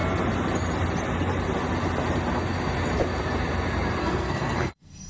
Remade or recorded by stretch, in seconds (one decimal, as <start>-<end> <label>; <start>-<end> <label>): 0.0-4.0 recorded; 4.0-5.1 remade